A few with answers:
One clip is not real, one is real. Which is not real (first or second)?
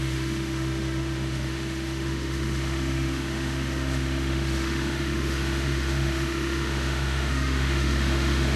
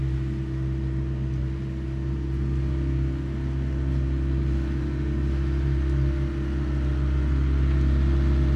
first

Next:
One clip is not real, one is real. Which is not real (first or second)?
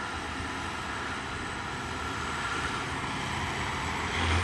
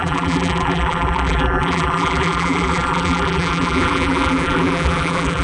second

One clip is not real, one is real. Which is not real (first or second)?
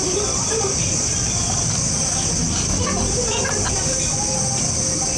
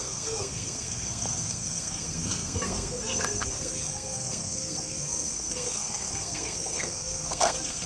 second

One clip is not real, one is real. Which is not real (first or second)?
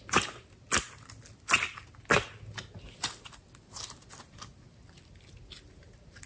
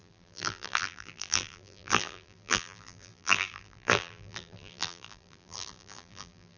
second